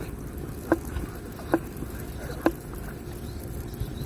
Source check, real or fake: real